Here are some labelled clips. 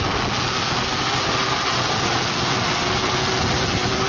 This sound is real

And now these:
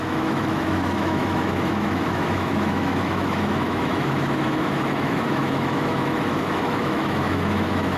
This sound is fake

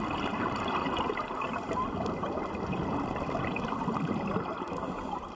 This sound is real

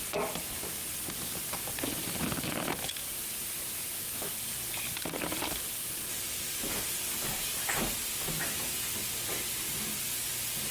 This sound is real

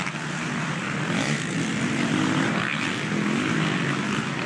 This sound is real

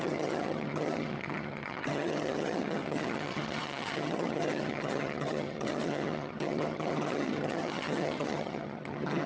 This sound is fake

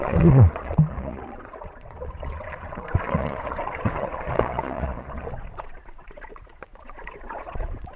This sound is fake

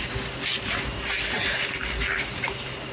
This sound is real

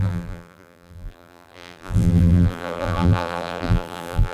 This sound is fake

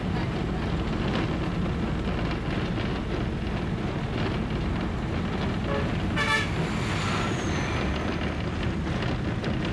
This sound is real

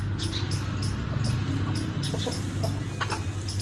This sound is real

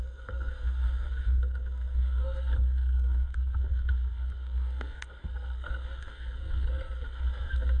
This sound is fake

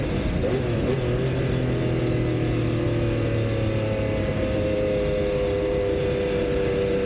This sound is real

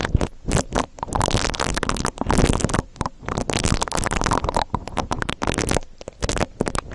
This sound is real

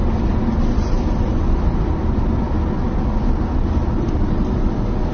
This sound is real